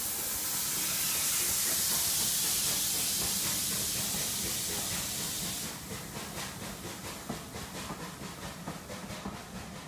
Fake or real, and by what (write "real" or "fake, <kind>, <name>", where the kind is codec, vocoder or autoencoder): real